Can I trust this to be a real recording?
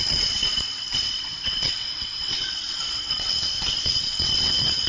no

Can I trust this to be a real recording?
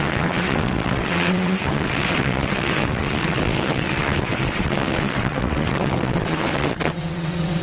no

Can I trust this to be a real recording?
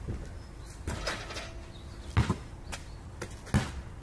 yes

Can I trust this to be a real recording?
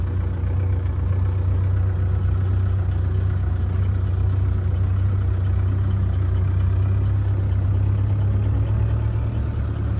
yes